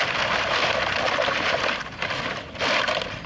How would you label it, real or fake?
real